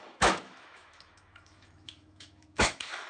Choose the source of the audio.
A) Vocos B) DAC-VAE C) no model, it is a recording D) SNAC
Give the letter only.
B